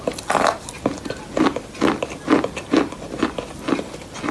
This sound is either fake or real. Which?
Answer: real